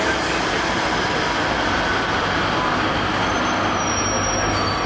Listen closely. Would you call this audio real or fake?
real